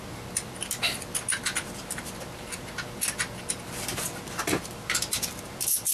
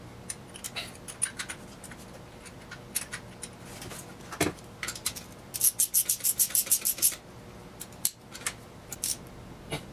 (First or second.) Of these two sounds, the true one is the second